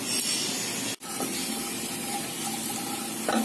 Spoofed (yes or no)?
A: no